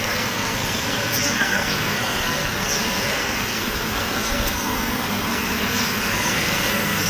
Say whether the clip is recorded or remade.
remade